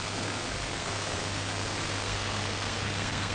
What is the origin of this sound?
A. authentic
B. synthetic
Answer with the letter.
B